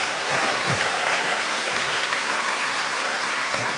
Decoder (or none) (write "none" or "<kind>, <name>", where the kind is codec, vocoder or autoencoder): codec, SNAC